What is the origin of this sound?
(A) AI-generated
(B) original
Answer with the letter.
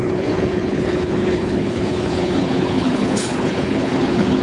A